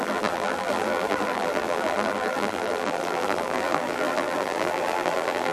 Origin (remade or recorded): remade